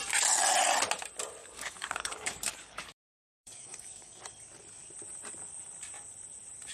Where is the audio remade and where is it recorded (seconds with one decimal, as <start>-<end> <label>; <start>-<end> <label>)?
0.0-1.4 recorded; 1.4-4.2 remade; 4.2-6.7 recorded